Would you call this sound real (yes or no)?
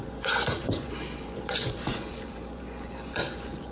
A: no